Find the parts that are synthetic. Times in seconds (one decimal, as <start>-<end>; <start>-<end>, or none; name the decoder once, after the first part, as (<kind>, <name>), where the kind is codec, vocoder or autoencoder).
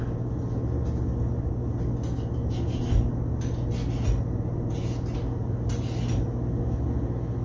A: none